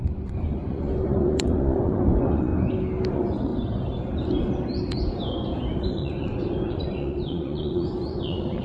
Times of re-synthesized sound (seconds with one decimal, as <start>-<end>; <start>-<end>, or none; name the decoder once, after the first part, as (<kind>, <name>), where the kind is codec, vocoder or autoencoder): 0.0-2.5 (vocoder, Vocos); 3.1-3.5; 5.8-8.6